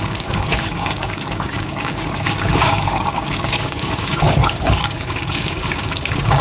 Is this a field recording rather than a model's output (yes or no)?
no